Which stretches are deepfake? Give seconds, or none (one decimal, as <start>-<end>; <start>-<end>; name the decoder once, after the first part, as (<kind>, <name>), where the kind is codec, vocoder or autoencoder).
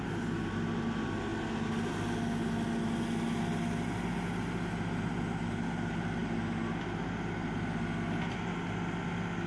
none